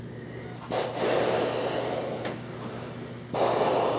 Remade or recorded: recorded